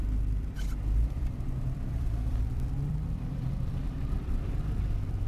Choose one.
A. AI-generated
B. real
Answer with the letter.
A